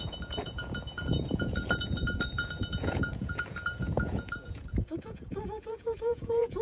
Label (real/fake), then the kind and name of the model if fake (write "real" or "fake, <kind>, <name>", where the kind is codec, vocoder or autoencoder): fake, vocoder, Vocos